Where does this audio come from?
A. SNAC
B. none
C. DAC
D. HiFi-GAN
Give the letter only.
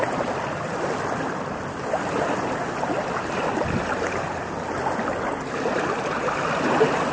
B